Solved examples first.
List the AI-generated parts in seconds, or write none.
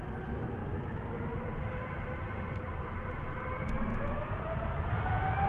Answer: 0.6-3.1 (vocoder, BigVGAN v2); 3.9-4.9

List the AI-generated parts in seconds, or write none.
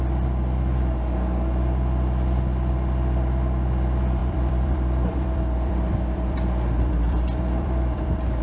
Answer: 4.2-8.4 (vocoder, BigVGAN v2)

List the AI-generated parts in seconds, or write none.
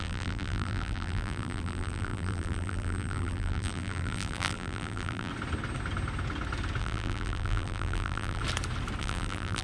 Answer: 0.0-5.3 (vocoder, BigVGAN v2); 6.8-8.4; 9.0-9.6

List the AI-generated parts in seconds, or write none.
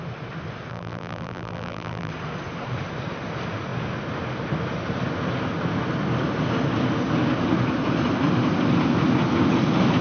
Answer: 0.7-2.1 (vocoder, BigVGAN v2)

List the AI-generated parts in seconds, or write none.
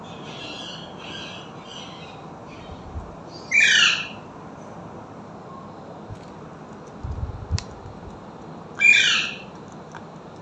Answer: 2.4-3.4 (vocoder, BigVGAN v2); 8.9-10.4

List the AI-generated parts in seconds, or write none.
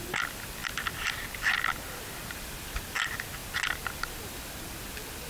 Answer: none